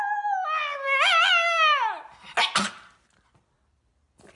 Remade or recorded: recorded